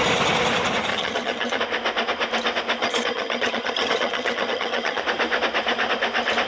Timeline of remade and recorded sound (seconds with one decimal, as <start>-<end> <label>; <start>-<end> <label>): 0.0-0.9 recorded; 0.9-1.6 remade; 1.6-2.8 recorded; 2.8-5.0 remade; 5.0-6.5 recorded